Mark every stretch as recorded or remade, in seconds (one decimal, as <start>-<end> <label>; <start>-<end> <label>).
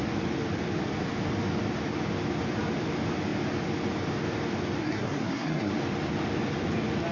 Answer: 0.0-4.8 recorded; 4.8-5.7 remade; 5.7-7.1 recorded